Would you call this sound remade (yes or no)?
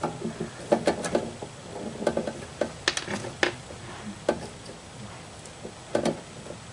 no